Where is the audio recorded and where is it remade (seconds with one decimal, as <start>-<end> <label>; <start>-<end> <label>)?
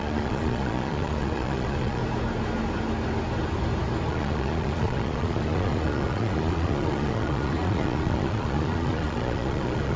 0.0-2.0 remade; 2.0-4.1 recorded; 4.1-10.0 remade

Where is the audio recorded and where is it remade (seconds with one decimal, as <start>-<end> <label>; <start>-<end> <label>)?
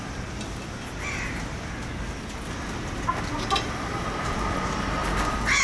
0.0-5.6 recorded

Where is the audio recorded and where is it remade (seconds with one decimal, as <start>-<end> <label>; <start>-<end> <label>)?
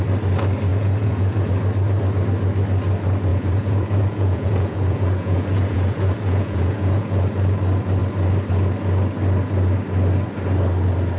0.0-0.7 recorded; 0.7-1.5 remade; 1.5-3.3 recorded; 3.3-7.6 remade; 7.6-11.2 recorded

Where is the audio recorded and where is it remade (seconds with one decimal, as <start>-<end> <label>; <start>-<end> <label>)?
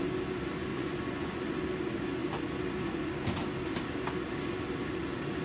0.0-0.7 recorded; 0.7-1.4 remade; 1.4-5.4 recorded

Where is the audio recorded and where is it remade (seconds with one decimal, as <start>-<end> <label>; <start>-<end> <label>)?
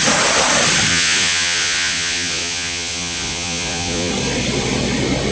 0.0-0.9 recorded; 0.9-4.1 remade; 4.1-5.3 recorded